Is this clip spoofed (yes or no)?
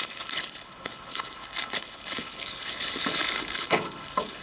yes